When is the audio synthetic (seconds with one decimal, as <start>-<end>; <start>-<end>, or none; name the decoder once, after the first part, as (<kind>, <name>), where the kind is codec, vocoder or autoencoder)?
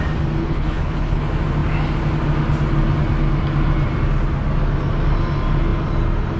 0.4-1.2 (codec, HILCodec)